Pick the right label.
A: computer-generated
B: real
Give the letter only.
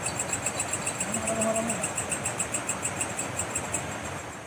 B